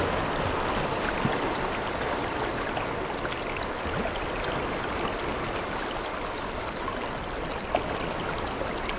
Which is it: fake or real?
real